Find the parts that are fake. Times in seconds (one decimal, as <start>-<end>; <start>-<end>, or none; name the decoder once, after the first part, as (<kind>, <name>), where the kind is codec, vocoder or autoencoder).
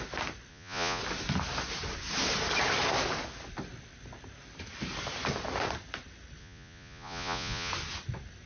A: 0.5-1.0 (vocoder, Vocos); 6.4-7.7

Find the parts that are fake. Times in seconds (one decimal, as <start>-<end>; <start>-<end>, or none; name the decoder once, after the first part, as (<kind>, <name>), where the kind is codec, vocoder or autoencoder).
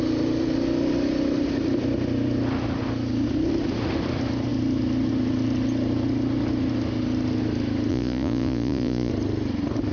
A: 7.9-9.1 (vocoder, Vocos)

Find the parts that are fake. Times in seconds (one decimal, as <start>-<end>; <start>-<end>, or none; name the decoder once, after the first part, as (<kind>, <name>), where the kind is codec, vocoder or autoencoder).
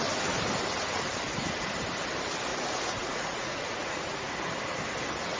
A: 2.5-4.3 (vocoder, Vocos)